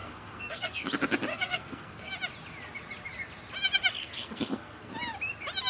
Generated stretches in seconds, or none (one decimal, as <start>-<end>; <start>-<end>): 0.0-0.9; 1.3-2.1; 4.0-4.9